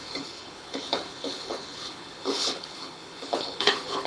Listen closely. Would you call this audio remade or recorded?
remade